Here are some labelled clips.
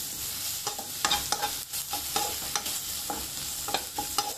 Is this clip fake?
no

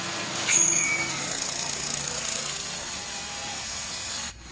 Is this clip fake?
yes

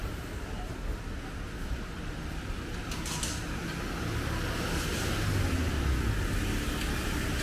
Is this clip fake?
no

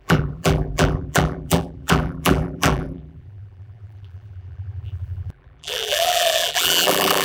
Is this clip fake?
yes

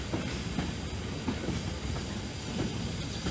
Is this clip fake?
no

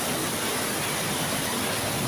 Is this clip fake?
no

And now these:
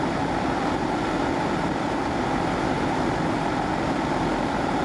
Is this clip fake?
no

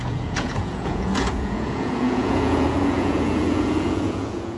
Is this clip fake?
yes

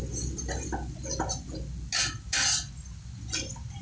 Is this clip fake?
no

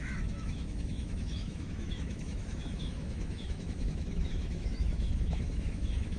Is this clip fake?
yes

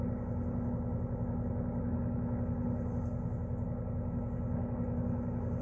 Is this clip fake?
no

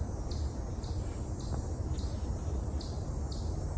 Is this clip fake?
no